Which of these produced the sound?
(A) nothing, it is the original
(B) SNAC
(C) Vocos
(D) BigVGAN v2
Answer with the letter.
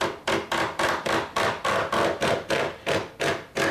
A